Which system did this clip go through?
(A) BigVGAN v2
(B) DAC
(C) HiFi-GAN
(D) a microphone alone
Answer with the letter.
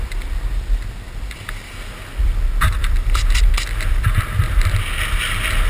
D